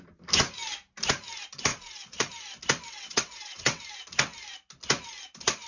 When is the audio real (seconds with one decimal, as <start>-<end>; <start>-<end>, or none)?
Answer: 0.0-1.7; 2.3-2.9; 3.8-5.7